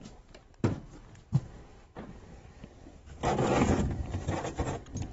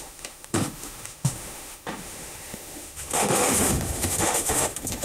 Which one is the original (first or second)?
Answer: first